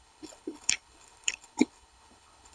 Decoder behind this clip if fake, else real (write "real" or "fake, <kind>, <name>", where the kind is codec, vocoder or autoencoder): fake, codec, HILCodec